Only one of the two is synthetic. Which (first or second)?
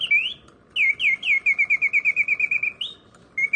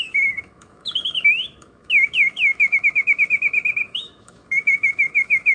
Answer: second